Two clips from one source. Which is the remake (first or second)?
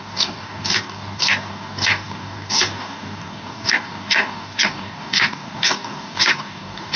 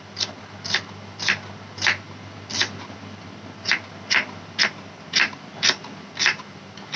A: first